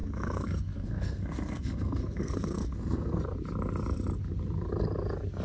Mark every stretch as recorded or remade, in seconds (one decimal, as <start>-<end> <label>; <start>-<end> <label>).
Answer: 0.0-3.2 remade; 3.2-5.4 recorded